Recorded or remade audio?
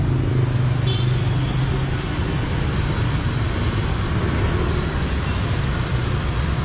recorded